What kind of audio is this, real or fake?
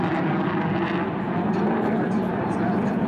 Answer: real